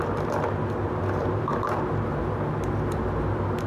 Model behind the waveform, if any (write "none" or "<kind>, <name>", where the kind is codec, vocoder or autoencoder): none